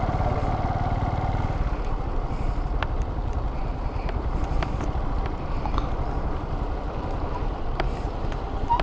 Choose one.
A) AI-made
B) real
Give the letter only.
B